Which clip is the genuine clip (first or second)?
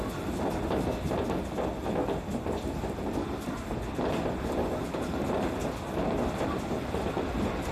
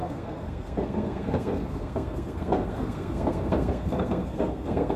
first